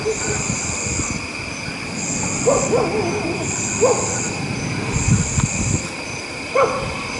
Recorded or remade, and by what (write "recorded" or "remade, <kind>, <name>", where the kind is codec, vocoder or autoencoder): recorded